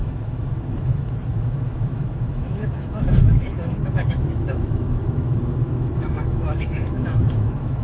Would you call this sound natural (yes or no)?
no